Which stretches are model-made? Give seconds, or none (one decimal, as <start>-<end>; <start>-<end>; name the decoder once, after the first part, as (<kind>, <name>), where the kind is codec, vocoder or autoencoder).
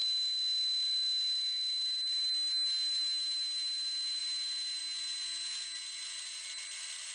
none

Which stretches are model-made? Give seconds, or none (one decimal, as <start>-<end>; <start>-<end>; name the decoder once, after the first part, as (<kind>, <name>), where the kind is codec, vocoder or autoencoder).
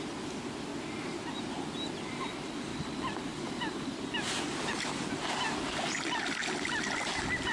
none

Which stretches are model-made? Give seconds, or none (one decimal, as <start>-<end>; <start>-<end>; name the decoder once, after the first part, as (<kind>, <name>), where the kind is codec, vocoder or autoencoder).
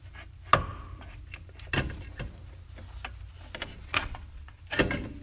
3.7-4.6 (vocoder, WaveNeXt)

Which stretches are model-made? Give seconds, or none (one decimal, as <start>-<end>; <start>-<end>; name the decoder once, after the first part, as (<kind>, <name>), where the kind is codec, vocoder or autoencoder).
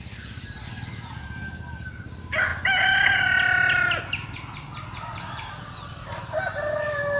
none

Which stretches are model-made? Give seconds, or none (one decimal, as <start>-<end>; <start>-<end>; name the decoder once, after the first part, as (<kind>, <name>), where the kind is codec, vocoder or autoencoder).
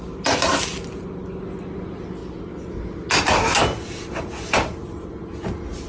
none